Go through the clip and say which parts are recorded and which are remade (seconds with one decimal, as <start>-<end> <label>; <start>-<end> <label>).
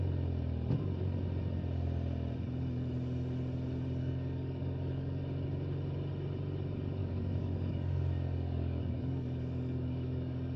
0.0-4.0 recorded; 4.0-5.2 remade; 5.2-7.0 recorded; 7.0-10.6 remade